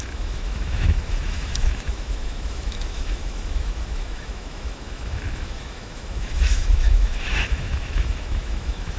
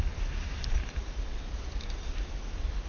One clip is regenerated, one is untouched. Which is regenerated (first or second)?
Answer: first